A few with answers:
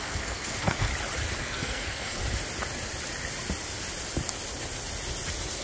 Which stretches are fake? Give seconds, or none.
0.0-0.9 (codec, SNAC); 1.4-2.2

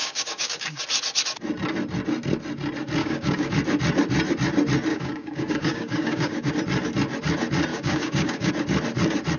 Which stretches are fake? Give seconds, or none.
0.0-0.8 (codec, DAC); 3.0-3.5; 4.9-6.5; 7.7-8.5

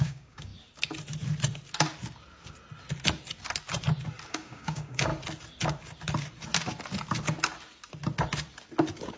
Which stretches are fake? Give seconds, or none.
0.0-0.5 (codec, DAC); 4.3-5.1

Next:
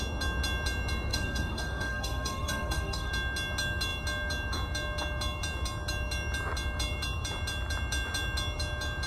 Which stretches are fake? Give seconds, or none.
1.1-3.1 (codec, SNAC)

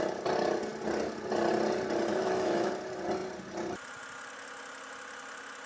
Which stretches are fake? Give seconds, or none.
2.1-2.7 (autoencoder, DAC-VAE)